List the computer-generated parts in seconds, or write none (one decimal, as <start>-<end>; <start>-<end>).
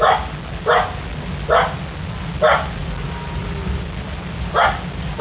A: none